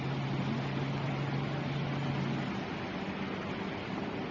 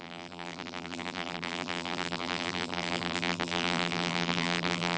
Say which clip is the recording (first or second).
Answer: first